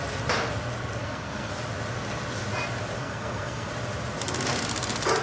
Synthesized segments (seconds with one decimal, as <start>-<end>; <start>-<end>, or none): 1.0-1.5; 3.0-3.7